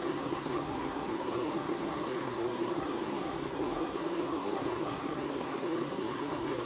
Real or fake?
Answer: fake